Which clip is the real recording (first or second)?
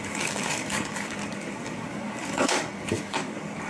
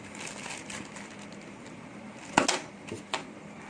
second